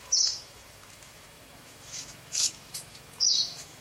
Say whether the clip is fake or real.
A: fake